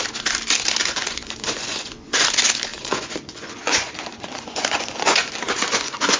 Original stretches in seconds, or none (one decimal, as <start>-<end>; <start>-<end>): 0.0-0.8; 2.3-2.7